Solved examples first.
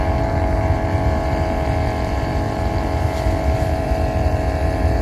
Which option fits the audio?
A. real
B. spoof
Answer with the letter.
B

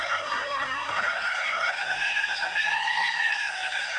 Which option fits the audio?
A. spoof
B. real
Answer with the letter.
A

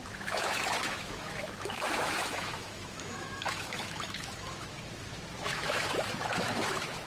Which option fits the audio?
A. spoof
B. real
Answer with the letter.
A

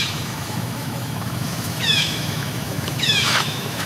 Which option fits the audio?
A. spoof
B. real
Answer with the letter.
A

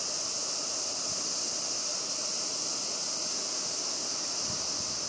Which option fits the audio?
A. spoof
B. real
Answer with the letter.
B